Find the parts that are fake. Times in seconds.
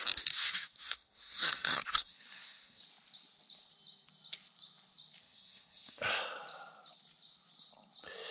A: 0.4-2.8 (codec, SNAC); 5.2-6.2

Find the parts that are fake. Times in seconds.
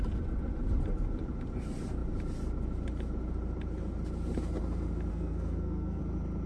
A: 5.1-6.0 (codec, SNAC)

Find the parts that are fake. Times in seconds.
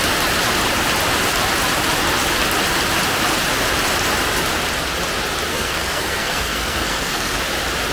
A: 5.5-7.4 (codec, SNAC)